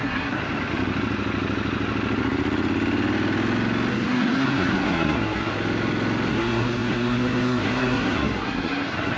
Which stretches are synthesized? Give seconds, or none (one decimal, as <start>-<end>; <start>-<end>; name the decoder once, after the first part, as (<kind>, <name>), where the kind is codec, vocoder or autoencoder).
0.0-0.4 (codec, SNAC); 3.9-5.5; 6.3-9.2